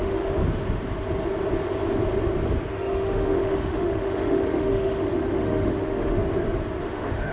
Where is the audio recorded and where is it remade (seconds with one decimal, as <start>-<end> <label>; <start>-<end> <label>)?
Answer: 0.0-0.4 remade; 0.4-2.7 recorded; 2.7-6.2 remade; 6.2-6.8 recorded; 6.8-7.3 remade